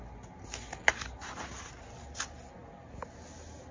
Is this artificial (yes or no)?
no